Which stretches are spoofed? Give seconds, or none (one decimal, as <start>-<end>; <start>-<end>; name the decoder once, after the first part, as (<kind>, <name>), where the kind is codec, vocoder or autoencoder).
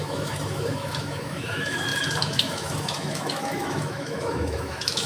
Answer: 0.0-5.1 (autoencoder, DAC-VAE)